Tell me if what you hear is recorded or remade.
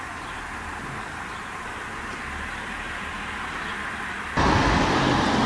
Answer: recorded